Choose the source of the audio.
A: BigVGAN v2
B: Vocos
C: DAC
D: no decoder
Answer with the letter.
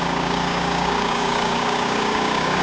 C